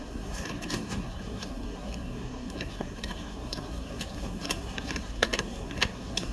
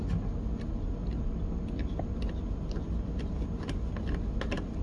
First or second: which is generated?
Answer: first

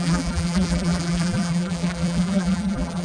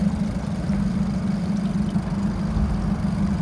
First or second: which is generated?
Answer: first